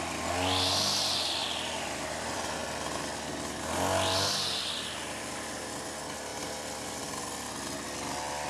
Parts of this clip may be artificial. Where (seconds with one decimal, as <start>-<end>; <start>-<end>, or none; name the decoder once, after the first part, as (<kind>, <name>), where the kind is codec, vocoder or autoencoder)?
1.4-3.0 (vocoder, BigVGAN v2); 6.3-7.1